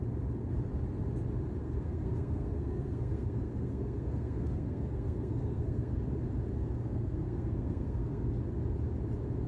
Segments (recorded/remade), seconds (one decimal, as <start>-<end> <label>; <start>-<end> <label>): 0.0-1.6 recorded; 1.6-6.0 remade; 6.0-6.5 recorded; 6.5-8.3 remade; 8.3-9.5 recorded